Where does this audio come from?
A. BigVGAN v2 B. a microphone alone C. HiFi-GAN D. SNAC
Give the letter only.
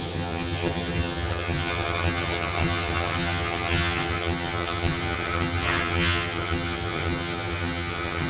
C